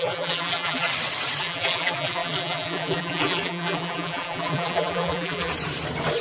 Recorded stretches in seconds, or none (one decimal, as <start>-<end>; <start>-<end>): 0.9-1.4; 5.5-6.2